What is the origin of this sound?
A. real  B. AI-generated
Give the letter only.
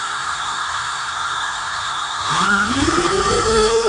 B